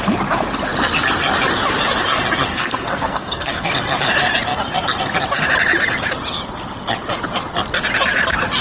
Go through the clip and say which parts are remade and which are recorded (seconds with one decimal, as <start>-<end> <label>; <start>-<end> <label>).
0.0-2.5 recorded; 2.5-3.7 remade; 3.7-8.6 recorded